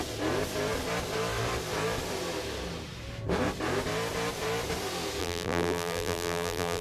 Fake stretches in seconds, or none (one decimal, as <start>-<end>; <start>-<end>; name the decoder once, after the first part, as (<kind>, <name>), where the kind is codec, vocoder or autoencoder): 5.2-6.8 (vocoder, BigVGAN v2)